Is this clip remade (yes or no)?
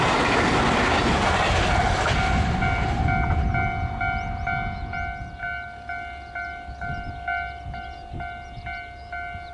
no